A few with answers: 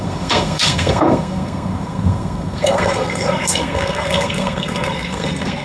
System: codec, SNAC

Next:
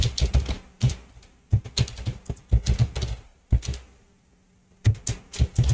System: none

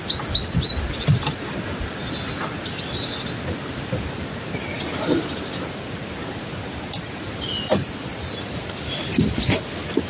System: none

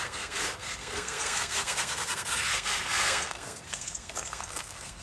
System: codec, SNAC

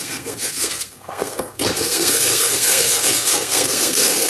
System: codec, SNAC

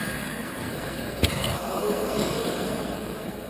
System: codec, SNAC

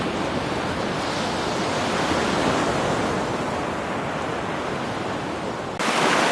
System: none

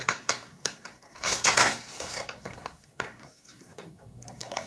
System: codec, SNAC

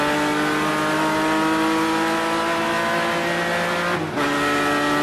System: none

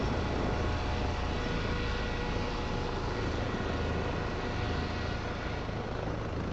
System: none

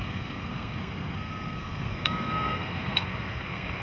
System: codec, SNAC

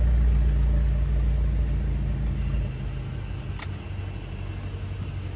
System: none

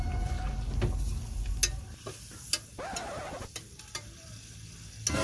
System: none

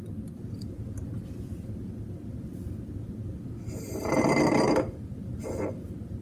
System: none